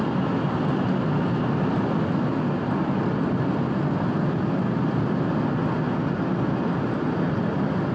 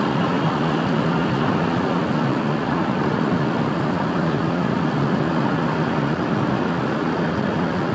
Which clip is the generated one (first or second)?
second